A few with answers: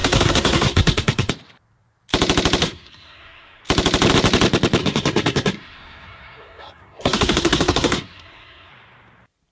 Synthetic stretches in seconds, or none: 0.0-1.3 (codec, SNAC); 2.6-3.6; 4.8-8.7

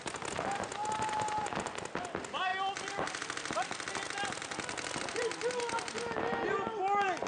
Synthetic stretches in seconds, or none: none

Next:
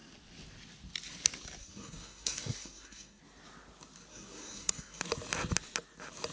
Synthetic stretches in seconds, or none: 1.6-3.2 (codec, SNAC); 4.1-5.0

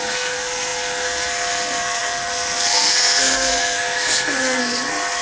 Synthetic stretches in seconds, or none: 0.0-5.2 (codec, SNAC)

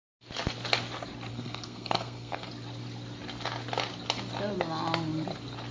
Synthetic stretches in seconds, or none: 1.3-2.5 (codec, SNAC)

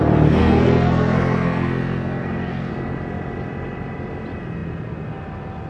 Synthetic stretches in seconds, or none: 0.4-2.7 (codec, SNAC)